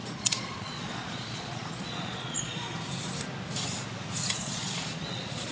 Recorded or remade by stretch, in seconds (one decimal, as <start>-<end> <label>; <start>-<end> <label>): 0.0-2.7 remade; 2.7-4.3 recorded; 4.3-5.5 remade